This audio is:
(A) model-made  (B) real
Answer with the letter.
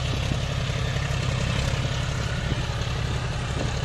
B